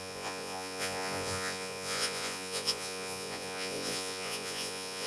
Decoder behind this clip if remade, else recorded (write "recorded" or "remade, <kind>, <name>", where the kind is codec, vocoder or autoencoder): remade, vocoder, Vocos